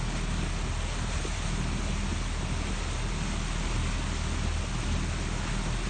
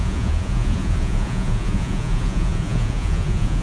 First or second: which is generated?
second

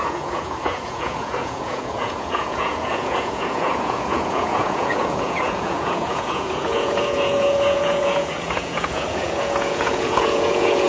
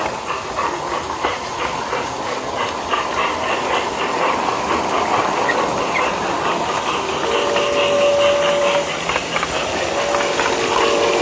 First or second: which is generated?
first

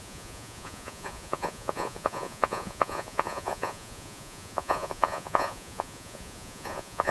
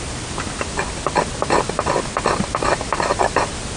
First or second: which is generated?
first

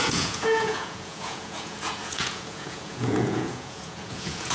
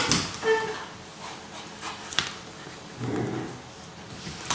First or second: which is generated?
first